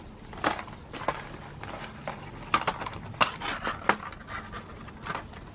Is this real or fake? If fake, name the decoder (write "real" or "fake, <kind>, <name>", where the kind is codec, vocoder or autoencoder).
real